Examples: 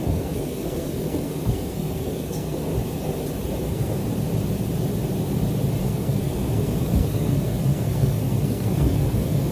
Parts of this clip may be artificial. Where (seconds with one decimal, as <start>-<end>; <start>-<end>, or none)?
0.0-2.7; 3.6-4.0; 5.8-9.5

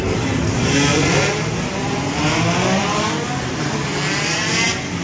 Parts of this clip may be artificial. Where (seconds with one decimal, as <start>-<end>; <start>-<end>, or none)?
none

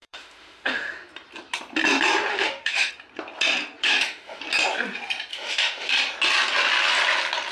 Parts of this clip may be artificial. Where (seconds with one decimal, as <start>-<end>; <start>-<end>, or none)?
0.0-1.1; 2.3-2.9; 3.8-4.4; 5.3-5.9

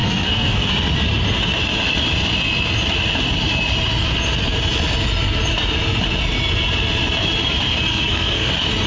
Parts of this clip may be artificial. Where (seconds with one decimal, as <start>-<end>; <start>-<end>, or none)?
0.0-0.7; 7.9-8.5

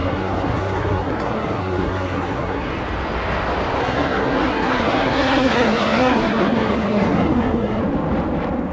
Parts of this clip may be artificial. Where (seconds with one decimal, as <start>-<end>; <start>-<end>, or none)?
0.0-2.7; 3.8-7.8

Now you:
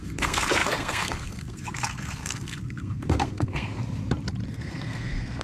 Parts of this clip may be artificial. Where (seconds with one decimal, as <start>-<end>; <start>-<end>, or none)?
0.0-3.8; 4.5-5.4

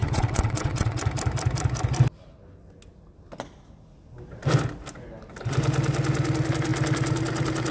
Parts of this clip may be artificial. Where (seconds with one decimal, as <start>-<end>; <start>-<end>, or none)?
0.0-1.0

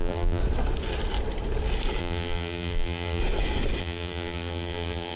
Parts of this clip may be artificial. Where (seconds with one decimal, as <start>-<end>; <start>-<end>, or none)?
0.0-0.4; 2.0-3.2; 3.8-5.2